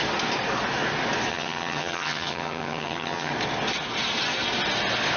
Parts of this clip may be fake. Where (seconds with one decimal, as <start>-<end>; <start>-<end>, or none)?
1.3-3.3